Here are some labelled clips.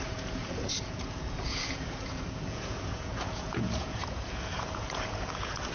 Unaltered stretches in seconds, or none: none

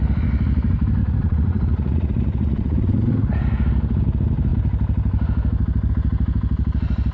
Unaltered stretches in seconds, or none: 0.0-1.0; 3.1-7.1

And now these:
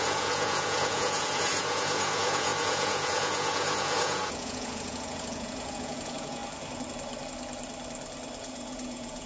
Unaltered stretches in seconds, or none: 6.4-8.4

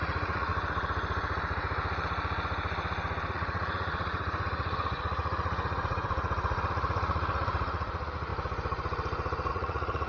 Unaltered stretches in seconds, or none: 0.5-3.3; 8.3-9.5

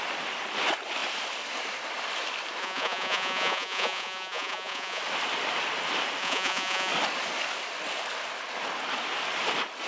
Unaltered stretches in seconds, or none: 0.0-2.6; 5.0-6.2; 6.9-9.9

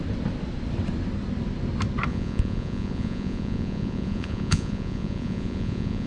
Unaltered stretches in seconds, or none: 0.0-2.1